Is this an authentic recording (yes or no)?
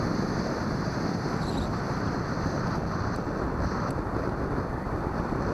yes